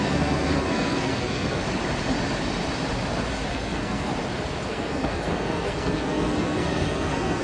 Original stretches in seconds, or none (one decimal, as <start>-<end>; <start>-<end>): 1.6-3.5; 4.1-4.7